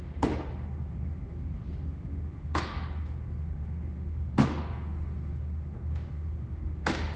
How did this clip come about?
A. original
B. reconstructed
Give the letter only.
B